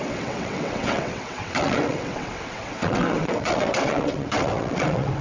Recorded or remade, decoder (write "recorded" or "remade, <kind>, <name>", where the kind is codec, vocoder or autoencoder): remade, vocoder, WaveNeXt